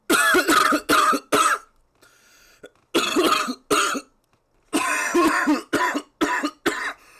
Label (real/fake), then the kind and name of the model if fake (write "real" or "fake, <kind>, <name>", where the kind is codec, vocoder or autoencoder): real